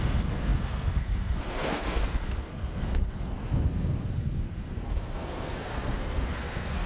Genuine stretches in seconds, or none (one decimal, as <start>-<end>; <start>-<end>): none